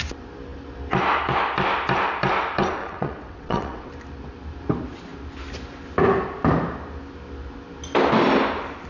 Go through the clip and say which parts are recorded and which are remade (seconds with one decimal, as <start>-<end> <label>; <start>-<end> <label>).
0.0-2.8 recorded; 2.8-3.9 remade; 3.9-8.9 recorded